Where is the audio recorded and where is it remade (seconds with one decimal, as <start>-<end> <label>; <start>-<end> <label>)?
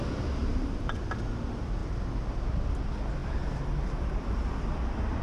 0.0-0.4 recorded; 0.4-1.1 remade; 1.1-3.2 recorded; 3.2-4.5 remade; 4.5-5.2 recorded